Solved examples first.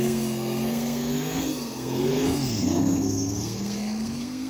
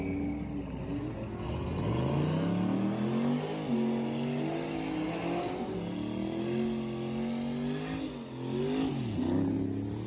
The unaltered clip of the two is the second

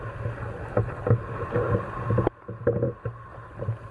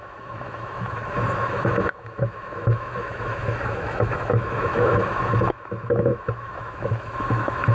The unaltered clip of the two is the first